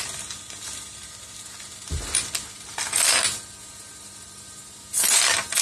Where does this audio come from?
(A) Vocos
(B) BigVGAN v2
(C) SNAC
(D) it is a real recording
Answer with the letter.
D